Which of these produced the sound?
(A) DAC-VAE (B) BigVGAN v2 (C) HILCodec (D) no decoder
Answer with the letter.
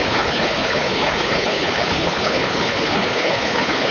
C